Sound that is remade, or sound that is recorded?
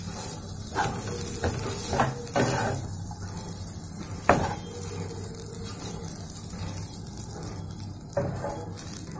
recorded